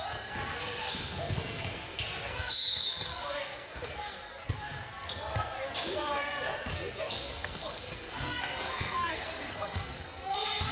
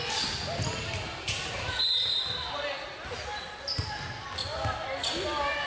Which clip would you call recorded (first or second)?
second